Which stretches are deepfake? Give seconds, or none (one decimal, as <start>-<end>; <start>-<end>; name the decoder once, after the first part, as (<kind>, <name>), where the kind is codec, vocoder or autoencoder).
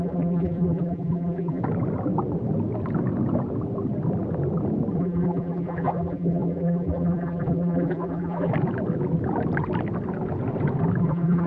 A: 0.0-1.6 (vocoder, BigVGAN v2); 5.0-8.5; 11.0-11.5